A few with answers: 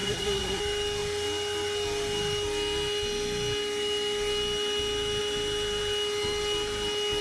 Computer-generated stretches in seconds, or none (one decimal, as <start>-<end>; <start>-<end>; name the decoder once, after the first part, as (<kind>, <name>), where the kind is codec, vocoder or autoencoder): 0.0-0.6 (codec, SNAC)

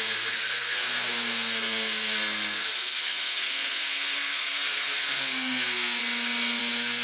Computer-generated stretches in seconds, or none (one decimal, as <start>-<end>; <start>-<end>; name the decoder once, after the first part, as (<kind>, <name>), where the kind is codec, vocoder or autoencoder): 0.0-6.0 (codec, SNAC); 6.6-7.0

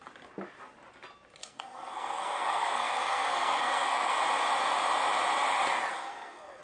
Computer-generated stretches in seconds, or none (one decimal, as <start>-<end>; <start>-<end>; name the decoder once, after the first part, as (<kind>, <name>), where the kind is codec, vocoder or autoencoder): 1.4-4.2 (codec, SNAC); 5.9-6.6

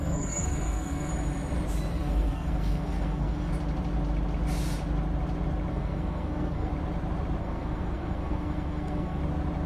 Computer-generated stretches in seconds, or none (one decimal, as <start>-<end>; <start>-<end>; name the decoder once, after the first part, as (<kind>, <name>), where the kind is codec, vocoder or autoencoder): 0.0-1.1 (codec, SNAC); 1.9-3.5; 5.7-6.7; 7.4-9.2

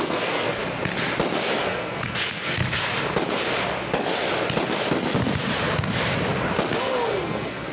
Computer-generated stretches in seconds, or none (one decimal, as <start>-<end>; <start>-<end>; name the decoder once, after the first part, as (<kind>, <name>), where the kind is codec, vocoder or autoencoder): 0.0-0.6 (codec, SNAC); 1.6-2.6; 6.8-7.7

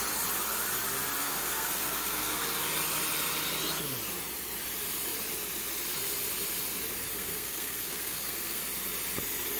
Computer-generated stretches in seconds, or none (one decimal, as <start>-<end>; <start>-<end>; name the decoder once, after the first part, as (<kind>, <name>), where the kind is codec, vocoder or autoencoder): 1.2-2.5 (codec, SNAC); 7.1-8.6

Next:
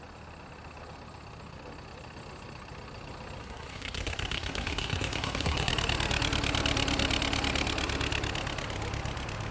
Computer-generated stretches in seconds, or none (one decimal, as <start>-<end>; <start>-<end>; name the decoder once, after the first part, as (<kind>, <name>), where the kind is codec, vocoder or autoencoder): 3.4-5.7 (codec, SNAC)